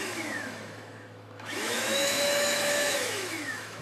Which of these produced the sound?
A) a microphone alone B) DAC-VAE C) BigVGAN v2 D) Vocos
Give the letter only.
B